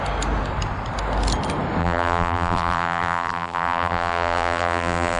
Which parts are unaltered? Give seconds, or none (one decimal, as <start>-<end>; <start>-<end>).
0.0-1.8